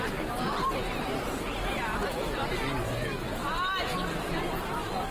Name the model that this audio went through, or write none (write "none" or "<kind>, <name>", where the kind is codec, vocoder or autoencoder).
none